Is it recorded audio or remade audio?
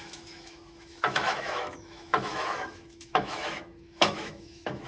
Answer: remade